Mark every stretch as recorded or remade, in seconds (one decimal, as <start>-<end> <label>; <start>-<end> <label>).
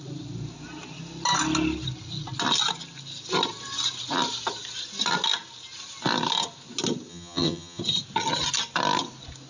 0.0-7.1 recorded; 7.1-7.8 remade; 7.8-9.5 recorded